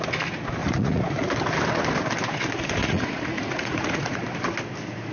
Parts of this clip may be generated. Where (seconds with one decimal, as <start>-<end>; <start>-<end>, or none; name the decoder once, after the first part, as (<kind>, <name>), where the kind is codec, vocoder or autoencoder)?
0.6-1.3 (vocoder, Vocos); 2.8-4.2